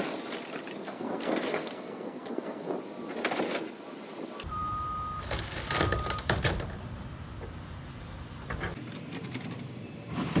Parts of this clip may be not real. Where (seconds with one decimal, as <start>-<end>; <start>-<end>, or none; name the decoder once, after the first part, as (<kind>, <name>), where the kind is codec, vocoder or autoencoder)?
0.8-2.7 (codec, SNAC)